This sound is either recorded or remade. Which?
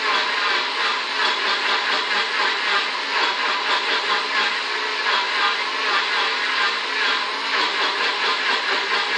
recorded